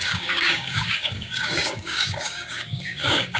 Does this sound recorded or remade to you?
remade